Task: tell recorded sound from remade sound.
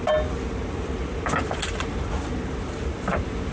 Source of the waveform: recorded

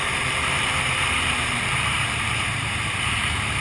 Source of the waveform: remade